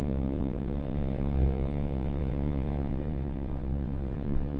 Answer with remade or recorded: remade